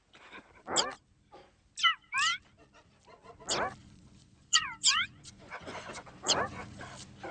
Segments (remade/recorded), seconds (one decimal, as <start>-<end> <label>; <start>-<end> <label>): 0.0-3.8 recorded; 3.8-6.8 remade; 6.8-7.3 recorded